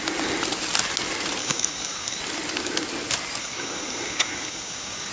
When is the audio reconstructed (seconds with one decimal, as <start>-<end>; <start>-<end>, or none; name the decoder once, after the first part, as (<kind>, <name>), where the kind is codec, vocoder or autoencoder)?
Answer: 1.4-2.2 (codec, DAC); 3.4-5.1